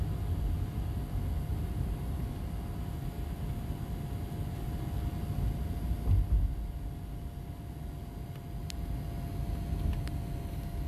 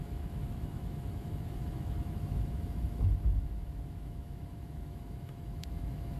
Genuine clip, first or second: first